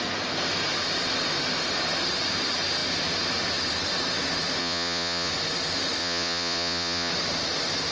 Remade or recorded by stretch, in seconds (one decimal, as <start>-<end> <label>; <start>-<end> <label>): 0.0-4.6 recorded; 4.6-5.3 remade; 5.3-6.0 recorded; 6.0-7.1 remade; 7.1-7.9 recorded